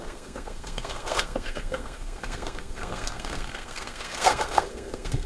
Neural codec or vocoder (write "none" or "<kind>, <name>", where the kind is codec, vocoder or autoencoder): codec, SNAC